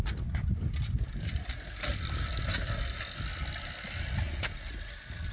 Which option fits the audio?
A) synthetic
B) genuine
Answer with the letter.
B